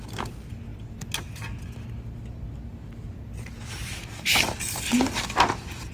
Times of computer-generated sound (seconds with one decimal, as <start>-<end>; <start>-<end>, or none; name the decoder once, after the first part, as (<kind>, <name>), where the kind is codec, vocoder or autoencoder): none